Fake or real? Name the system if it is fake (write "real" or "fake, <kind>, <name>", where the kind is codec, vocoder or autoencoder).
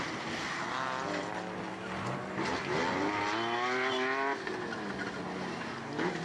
real